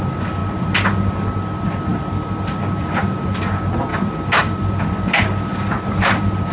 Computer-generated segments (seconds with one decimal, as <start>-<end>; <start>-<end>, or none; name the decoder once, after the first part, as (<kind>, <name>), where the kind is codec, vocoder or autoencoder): 1.9-3.3 (vocoder, BigVGAN v2); 3.9-6.5